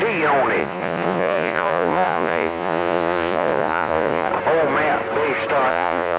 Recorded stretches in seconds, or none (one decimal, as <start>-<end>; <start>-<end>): 0.0-0.6; 4.3-5.7